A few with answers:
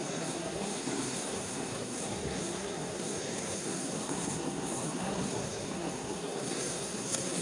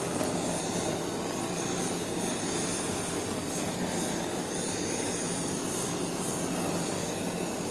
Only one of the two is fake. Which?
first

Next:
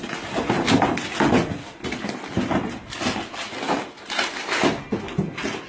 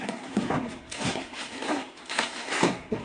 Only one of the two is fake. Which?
second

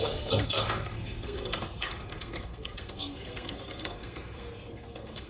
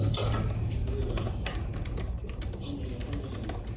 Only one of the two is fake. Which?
first